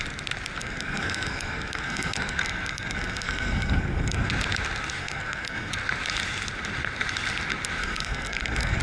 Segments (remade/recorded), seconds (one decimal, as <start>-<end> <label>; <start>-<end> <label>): 0.0-0.6 recorded; 0.6-4.3 remade; 4.3-5.0 recorded; 5.0-5.7 remade; 5.7-7.8 recorded; 7.8-8.8 remade

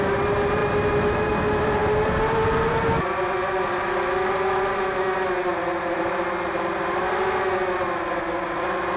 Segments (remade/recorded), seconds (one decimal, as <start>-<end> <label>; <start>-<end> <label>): 0.0-9.0 recorded

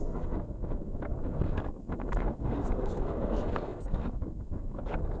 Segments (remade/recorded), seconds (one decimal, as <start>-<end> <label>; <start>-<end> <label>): 0.0-5.2 remade

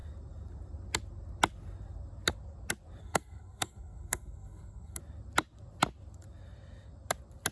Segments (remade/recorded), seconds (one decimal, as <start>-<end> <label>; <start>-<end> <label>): 0.0-3.0 recorded; 3.0-5.0 remade; 5.0-7.5 recorded

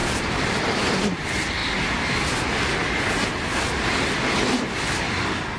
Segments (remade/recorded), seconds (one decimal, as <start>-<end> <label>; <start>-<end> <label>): 0.0-5.6 recorded

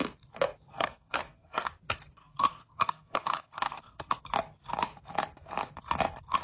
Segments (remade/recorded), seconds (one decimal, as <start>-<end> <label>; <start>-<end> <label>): 0.0-0.7 recorded; 0.7-1.7 remade; 1.7-2.2 recorded; 2.2-4.2 remade; 4.2-6.4 recorded

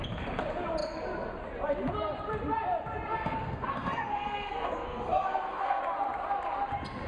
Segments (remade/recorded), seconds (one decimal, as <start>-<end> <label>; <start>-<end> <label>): 0.0-3.1 recorded; 3.1-5.8 remade; 5.8-7.1 recorded